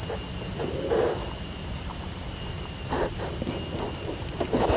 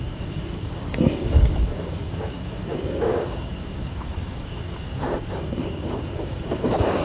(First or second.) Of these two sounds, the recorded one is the first